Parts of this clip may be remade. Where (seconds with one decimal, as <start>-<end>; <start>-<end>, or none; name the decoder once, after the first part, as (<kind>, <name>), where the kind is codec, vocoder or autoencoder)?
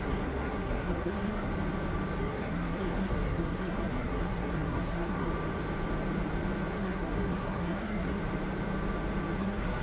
0.0-1.5 (codec, SNAC); 2.2-5.3; 6.7-8.2; 9.4-9.8